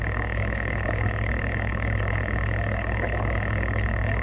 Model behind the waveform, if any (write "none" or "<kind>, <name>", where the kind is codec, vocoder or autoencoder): codec, HILCodec